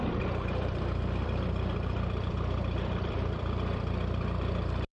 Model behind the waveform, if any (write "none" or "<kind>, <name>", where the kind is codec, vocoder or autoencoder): vocoder, BigVGAN v2